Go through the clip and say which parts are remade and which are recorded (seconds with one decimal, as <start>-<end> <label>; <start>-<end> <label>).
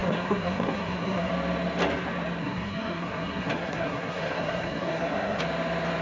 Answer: 0.0-1.3 remade; 1.3-2.4 recorded; 2.4-5.4 remade; 5.4-6.0 recorded